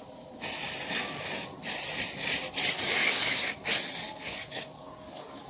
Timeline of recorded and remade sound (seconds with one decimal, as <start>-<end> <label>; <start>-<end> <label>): 0.0-3.0 recorded; 3.0-5.5 remade